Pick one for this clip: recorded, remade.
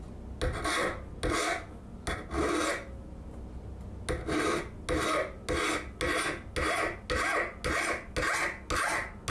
recorded